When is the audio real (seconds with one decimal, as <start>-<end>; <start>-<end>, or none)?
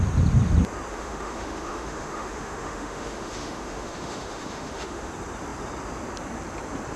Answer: 0.0-0.9; 5.1-7.0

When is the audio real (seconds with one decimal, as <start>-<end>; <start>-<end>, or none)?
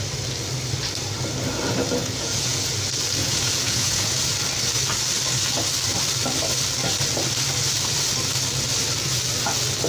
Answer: 0.0-2.0; 2.7-3.2; 4.3-9.9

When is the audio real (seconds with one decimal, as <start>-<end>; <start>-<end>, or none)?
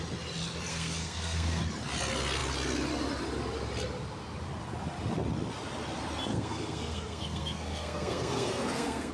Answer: 0.0-0.7; 1.6-6.3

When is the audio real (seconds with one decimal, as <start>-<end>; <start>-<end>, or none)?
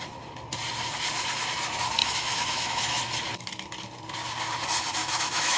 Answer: 0.0-2.0; 3.0-5.0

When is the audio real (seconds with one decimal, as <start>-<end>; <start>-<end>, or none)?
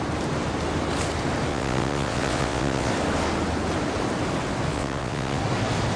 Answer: 0.0-1.5; 2.9-4.7; 5.4-6.0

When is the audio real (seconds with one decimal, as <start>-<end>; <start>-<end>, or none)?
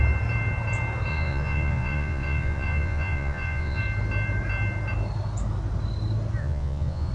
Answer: 0.0-1.1; 3.8-6.4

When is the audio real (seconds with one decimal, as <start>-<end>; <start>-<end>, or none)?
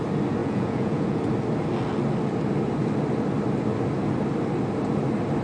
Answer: 0.0-0.4; 1.2-5.4